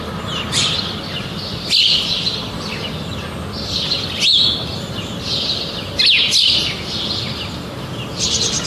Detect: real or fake real